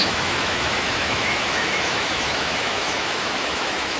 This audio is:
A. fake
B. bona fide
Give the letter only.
A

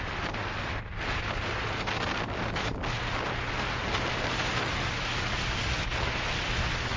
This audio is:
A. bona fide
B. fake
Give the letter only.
A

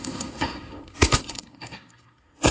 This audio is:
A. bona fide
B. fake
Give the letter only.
B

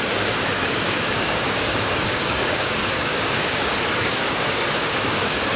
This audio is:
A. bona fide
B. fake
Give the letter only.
B